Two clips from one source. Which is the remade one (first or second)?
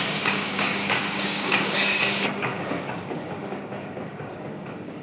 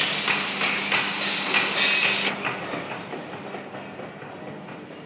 first